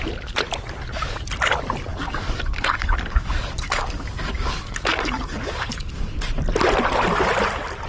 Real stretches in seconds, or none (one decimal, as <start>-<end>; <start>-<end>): 0.0-1.9; 6.0-7.9